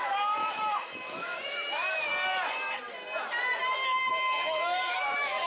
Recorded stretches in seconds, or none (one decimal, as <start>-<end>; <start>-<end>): 2.1-4.1